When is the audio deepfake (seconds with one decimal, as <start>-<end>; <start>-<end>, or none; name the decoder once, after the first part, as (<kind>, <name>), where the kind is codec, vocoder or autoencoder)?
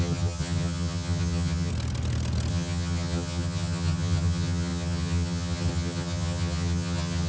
0.0-1.7 (vocoder, HiFi-GAN); 2.5-7.3